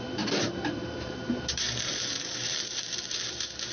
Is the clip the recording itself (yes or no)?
no